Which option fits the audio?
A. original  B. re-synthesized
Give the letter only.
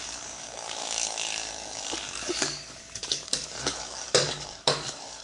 B